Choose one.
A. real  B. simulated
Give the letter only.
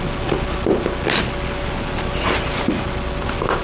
A